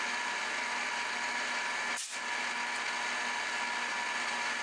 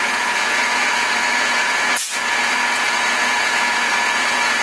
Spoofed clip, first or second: second